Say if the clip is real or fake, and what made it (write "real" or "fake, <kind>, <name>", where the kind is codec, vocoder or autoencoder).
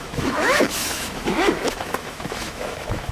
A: fake, autoencoder, DAC-VAE